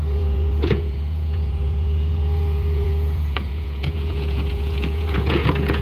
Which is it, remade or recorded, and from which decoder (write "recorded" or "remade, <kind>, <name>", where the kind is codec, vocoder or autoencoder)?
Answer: remade, vocoder, Vocos